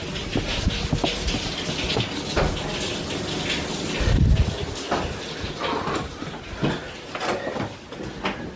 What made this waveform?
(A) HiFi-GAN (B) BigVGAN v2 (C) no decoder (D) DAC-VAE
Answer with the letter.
C